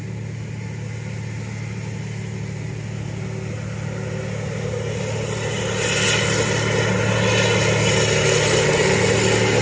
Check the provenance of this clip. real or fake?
real